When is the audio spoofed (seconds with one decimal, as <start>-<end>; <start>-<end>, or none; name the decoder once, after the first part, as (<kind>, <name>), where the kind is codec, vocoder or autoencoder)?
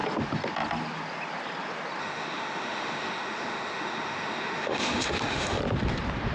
2.0-5.6 (autoencoder, DAC-VAE)